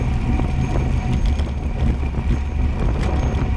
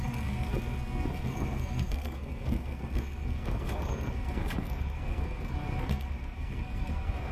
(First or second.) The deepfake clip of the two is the second